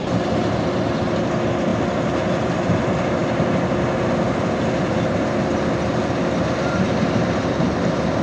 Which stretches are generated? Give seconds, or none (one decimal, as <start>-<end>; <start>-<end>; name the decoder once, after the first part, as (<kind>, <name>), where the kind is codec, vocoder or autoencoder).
none